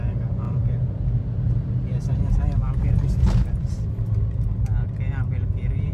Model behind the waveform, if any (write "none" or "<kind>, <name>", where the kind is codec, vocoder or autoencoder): none